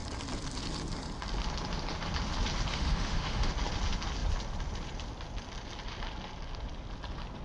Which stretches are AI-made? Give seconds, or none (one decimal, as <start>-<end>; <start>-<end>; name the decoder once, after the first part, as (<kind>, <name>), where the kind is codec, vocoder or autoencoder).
2.7-3.5 (autoencoder, DAC-VAE)